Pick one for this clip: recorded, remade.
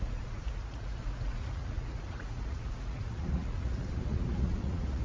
remade